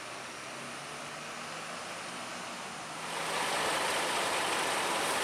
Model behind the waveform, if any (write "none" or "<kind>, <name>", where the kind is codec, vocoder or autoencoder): none